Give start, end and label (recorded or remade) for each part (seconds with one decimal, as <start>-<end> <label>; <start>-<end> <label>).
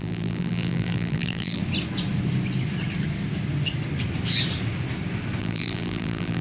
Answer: 0.0-1.6 remade; 1.6-5.4 recorded; 5.4-6.4 remade